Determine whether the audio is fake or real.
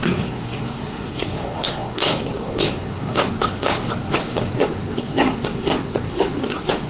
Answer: fake